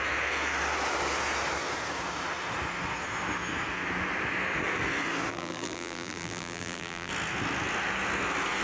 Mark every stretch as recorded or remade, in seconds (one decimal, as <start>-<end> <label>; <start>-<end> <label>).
0.0-5.3 recorded; 5.3-7.1 remade; 7.1-8.6 recorded